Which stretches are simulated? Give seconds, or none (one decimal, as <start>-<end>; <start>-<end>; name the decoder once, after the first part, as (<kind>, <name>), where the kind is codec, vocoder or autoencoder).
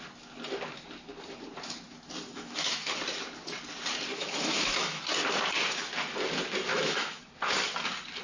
2.3-2.9 (autoencoder, DAC-VAE); 4.1-5.0; 6.7-7.2